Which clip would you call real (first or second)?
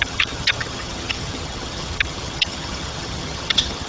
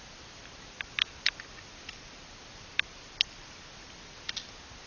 second